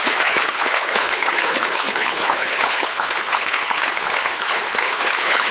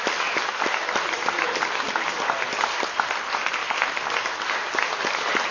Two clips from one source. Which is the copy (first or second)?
first